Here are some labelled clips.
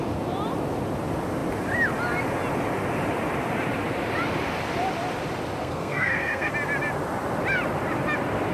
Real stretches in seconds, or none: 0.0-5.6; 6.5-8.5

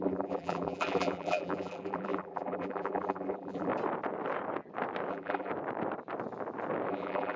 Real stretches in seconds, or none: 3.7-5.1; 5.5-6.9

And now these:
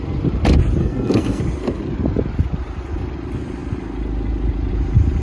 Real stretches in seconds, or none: 0.0-0.8; 1.4-5.2